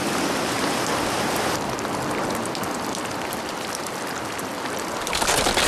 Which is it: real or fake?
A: fake